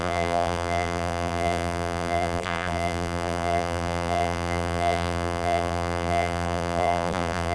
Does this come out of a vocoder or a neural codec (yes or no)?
yes